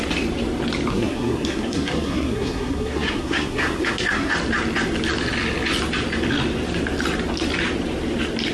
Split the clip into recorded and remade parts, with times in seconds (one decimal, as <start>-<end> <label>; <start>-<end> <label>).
0.0-0.9 recorded; 0.9-4.3 remade; 4.3-8.5 recorded